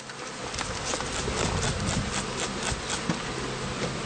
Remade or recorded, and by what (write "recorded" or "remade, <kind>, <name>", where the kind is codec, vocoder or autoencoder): recorded